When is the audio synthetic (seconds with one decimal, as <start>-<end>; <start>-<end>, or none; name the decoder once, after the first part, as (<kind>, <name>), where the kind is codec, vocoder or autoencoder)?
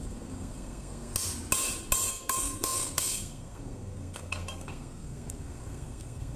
0.0-1.1 (codec, SNAC); 2.1-6.4